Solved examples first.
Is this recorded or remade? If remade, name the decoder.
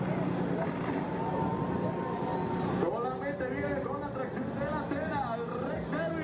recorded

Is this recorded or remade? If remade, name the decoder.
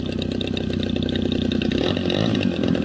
recorded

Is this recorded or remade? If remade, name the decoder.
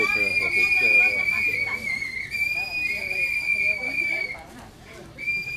remade, vocoder, BigVGAN v2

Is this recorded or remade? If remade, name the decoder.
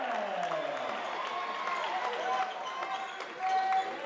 recorded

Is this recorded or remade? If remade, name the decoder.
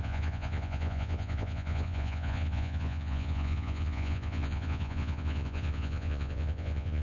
remade, vocoder, Vocos